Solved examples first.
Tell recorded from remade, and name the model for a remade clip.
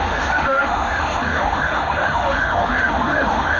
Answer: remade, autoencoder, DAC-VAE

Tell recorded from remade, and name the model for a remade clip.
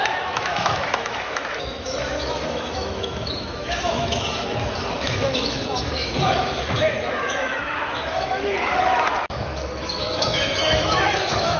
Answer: remade, autoencoder, DAC-VAE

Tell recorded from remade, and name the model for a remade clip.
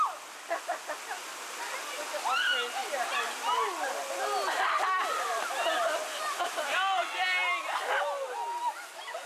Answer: recorded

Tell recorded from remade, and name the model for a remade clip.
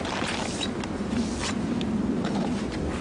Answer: recorded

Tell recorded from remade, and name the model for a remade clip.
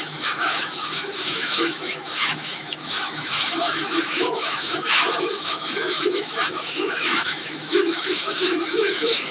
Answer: remade, autoencoder, DAC-VAE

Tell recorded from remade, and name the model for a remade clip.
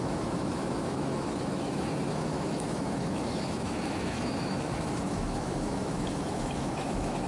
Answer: remade, autoencoder, DAC-VAE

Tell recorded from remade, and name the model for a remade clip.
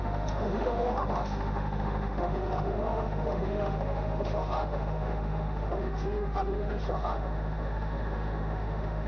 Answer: remade, autoencoder, DAC-VAE